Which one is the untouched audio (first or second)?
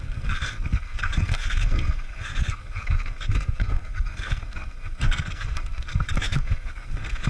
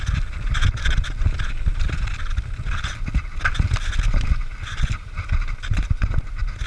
second